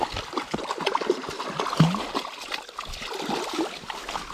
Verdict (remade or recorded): recorded